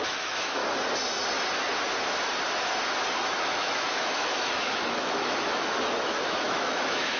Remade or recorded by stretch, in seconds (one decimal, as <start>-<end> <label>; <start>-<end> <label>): 0.0-0.6 remade; 0.6-3.2 recorded; 3.2-7.2 remade